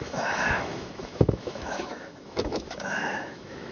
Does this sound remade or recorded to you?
remade